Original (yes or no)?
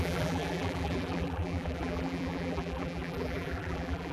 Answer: no